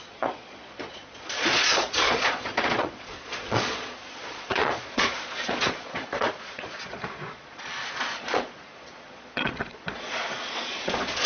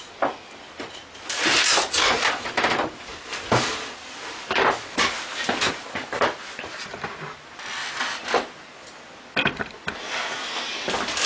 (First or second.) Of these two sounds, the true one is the second